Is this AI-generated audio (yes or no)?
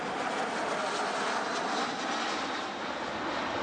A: no